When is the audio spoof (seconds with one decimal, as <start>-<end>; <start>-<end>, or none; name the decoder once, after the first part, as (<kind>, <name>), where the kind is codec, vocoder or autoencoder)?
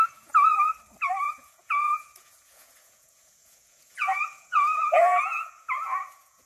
0.0-0.7 (vocoder, Vocos); 1.2-6.5